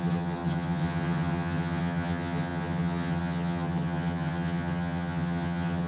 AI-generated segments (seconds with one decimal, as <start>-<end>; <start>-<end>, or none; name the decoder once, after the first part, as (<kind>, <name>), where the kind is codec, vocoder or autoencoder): 0.0-5.9 (vocoder, HiFi-GAN)